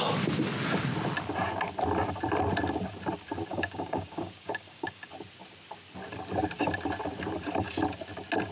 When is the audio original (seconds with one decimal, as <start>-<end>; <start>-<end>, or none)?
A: 0.0-3.5; 5.1-8.5